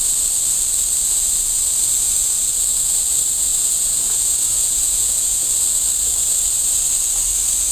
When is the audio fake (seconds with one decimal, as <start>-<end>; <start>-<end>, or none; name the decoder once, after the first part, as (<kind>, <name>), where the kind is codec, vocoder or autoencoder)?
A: 3.5-5.5 (vocoder, Vocos)